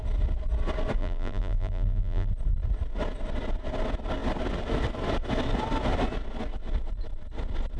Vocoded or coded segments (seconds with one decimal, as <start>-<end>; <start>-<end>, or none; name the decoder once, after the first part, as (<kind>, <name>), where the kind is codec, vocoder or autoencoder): 1.0-2.3 (vocoder, BigVGAN v2)